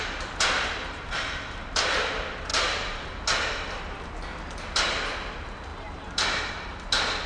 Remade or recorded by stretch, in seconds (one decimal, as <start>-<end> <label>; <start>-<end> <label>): 0.0-7.3 recorded